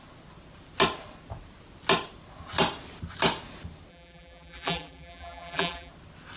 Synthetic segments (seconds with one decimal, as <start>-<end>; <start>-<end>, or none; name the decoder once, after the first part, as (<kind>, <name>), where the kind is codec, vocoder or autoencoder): 3.9-5.9 (vocoder, BigVGAN v2)